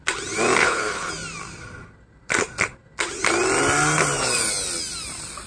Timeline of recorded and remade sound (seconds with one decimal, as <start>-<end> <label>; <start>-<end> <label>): 0.0-0.6 recorded; 0.6-1.1 remade; 1.1-5.5 recorded